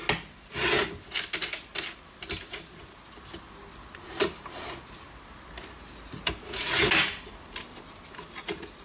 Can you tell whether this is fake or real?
real